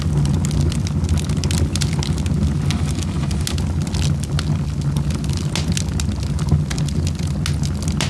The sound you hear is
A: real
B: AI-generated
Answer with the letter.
A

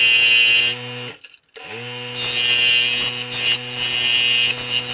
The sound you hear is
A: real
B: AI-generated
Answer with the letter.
A